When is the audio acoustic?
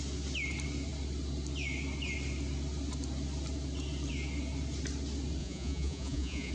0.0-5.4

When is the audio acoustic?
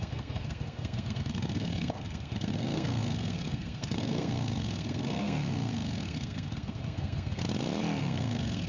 7.4-8.0